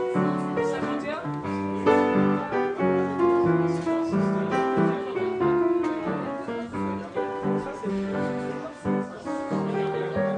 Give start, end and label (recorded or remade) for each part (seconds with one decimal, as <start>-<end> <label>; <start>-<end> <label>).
0.0-7.9 recorded; 7.9-8.5 remade; 8.5-10.4 recorded